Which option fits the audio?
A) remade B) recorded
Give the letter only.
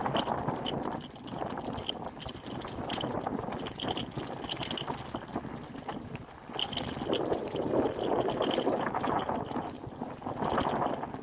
B